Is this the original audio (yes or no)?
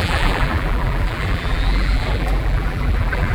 no